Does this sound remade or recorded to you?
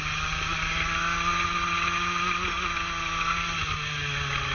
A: recorded